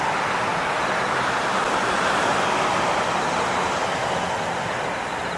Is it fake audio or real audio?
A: real